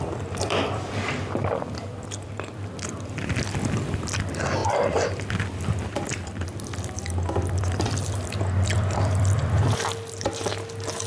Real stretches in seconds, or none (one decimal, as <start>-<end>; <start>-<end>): 10.5-11.1